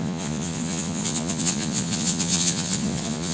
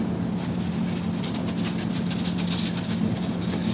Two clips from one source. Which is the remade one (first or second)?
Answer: first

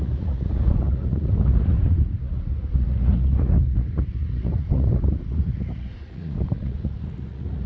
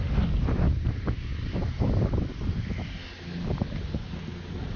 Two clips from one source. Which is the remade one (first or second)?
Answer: first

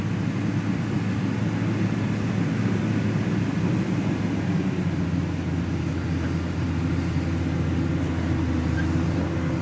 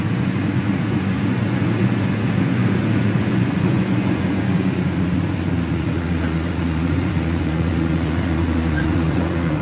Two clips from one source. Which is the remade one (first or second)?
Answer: second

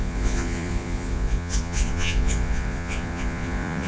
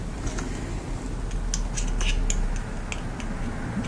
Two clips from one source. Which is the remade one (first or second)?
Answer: first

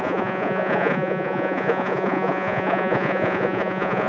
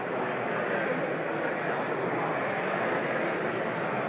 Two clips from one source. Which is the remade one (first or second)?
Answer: first